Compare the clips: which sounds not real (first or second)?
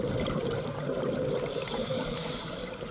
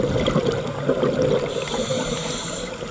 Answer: first